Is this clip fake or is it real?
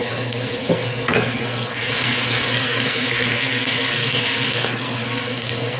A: fake